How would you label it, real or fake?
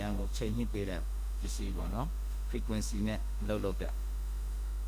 fake